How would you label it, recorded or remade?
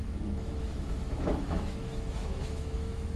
remade